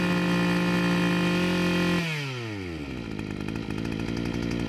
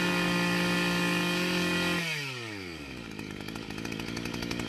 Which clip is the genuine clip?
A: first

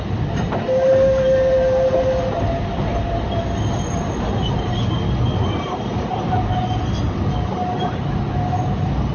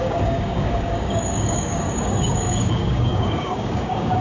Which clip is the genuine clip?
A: first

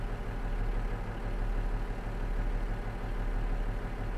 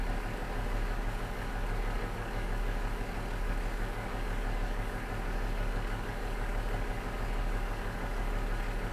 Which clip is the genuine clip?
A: first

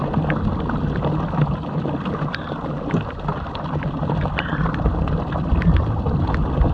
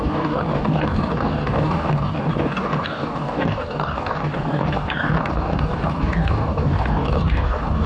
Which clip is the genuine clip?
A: first